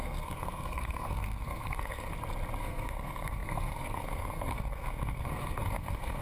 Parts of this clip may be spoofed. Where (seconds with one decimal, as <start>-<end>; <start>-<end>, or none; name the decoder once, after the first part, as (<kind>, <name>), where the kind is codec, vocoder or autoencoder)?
0.0-2.1 (codec, SNAC); 2.6-6.2